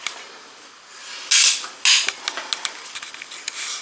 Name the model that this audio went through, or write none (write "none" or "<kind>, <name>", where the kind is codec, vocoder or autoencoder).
none